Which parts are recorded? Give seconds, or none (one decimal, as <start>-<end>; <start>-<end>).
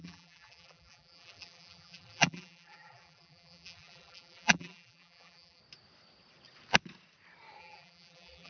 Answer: 5.6-7.6